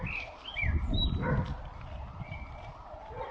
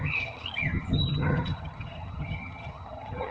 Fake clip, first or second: second